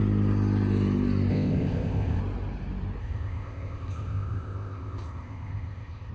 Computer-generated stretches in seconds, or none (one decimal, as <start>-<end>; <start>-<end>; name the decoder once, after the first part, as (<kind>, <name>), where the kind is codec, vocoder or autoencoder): 1.3-2.2 (codec, ZipCodec); 3.0-6.1